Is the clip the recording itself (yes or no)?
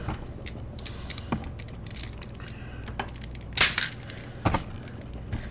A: yes